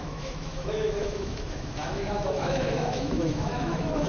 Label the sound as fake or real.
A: fake